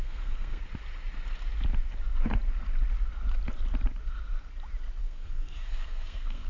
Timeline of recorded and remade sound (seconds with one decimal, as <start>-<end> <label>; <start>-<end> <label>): 0.0-0.6 remade; 0.6-5.0 recorded; 5.0-6.5 remade